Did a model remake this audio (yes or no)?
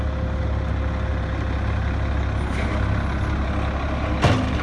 no